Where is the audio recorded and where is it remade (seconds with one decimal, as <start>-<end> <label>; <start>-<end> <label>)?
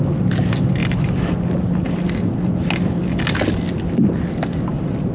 0.0-5.1 recorded